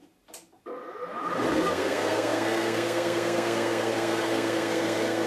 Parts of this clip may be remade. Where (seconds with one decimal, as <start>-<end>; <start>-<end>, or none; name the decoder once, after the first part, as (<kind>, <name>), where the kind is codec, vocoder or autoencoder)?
1.5-5.3 (codec, SNAC)